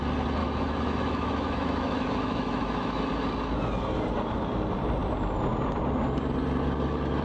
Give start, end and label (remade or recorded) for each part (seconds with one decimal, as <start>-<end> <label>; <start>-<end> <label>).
0.0-0.4 recorded; 0.4-3.0 remade; 3.0-7.2 recorded